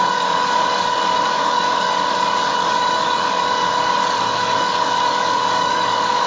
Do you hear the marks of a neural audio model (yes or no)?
yes